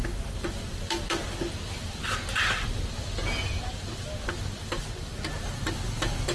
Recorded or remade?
recorded